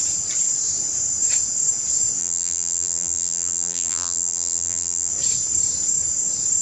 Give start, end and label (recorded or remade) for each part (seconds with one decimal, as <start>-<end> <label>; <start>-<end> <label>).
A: 0.0-2.2 recorded; 2.2-5.1 remade; 5.1-6.6 recorded